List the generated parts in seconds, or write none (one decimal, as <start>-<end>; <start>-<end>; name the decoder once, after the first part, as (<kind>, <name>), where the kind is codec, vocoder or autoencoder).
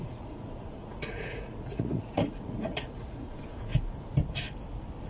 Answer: 0.0-3.7 (vocoder, Vocos)